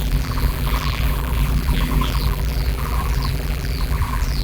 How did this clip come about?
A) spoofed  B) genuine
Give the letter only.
A